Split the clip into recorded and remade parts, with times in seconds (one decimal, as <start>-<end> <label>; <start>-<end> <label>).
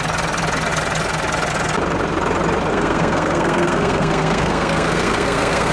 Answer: 0.0-2.7 recorded; 2.7-5.7 remade